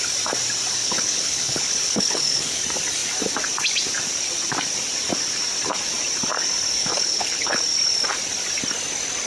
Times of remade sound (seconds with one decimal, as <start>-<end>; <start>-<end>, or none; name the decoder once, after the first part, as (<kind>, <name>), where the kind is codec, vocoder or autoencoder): 0.8-2.6 (codec, HILCodec); 6.8-7.6